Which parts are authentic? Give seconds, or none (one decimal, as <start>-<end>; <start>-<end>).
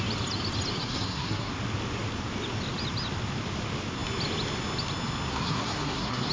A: 0.0-0.8; 1.5-5.3